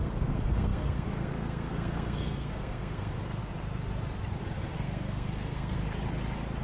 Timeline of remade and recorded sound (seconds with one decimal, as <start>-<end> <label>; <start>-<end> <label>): 0.0-3.4 remade; 3.4-4.4 recorded; 4.4-5.8 remade; 5.8-6.6 recorded

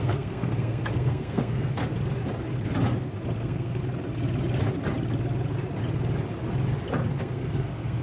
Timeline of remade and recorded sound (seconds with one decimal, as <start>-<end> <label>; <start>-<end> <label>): 0.0-1.8 remade; 1.8-3.4 recorded; 3.4-3.8 remade; 3.8-7.2 recorded; 7.2-8.0 remade

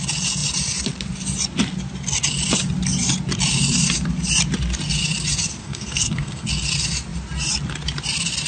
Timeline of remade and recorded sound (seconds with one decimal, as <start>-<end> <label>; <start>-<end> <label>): 0.0-5.6 recorded; 5.6-6.5 remade; 6.5-8.5 recorded

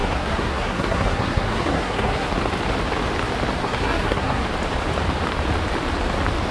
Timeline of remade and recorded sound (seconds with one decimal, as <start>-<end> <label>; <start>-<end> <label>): 0.0-2.3 remade; 2.3-3.6 recorded; 3.6-4.4 remade; 4.4-6.5 recorded

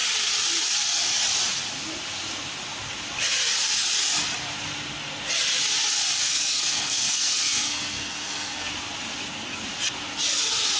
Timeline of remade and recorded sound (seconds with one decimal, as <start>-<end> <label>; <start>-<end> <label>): 0.0-6.2 recorded; 6.2-8.7 remade; 8.7-10.8 recorded

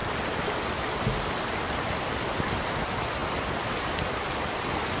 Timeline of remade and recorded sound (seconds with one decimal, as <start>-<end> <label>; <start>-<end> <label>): 0.0-5.0 recorded

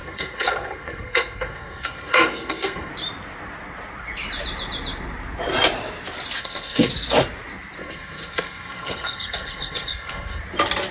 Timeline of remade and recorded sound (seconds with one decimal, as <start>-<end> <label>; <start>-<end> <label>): 0.0-2.9 remade; 2.9-6.4 recorded; 6.4-6.9 remade; 6.9-7.8 recorded; 7.8-10.4 remade; 10.4-10.9 recorded

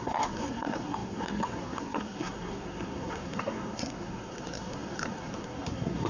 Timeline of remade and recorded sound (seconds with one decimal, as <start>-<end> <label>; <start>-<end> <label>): 0.0-6.1 remade